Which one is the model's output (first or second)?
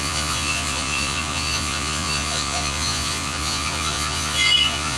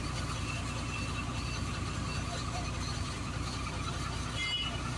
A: first